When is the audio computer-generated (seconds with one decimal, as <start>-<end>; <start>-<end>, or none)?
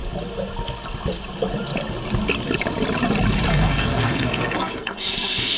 3.5-5.6